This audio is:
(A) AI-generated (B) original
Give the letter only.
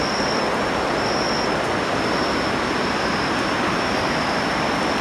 B